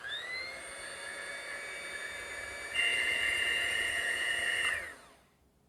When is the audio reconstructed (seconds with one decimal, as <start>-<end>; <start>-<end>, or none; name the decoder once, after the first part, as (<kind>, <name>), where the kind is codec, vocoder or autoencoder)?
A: 2.9-4.3 (vocoder, Vocos)